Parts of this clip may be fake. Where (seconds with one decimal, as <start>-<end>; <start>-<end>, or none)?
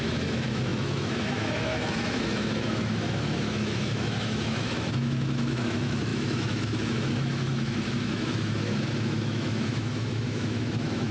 0.0-11.1